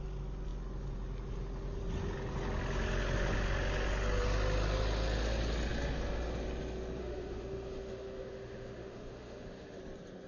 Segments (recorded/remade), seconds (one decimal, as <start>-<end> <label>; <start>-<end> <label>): 0.0-7.0 recorded; 7.0-9.8 remade; 9.8-10.3 recorded